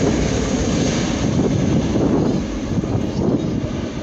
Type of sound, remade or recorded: recorded